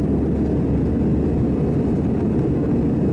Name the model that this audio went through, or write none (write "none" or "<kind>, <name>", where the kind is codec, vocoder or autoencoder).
none